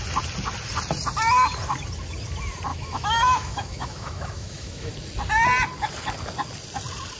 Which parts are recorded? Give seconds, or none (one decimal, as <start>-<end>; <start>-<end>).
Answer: 0.0-2.7; 4.9-7.2